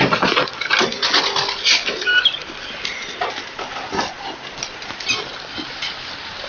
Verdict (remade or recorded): recorded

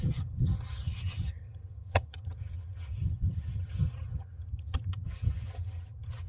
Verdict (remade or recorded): remade